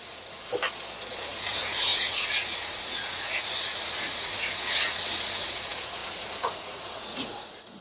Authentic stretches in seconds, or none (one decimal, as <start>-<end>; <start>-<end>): 0.5-1.1